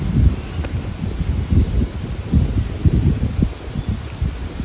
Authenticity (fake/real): real